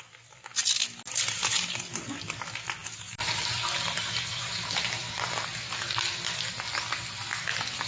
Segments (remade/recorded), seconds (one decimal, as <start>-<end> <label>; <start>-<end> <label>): 0.0-2.8 recorded; 2.8-3.4 remade; 3.4-4.4 recorded; 4.4-5.0 remade; 5.0-7.9 recorded